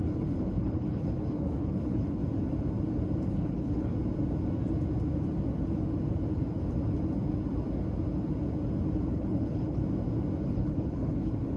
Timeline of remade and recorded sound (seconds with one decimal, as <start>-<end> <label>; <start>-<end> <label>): 0.0-2.2 remade; 2.2-3.3 recorded; 3.3-3.9 remade; 3.9-9.1 recorded; 9.1-9.8 remade; 9.8-10.5 recorded; 10.5-11.6 remade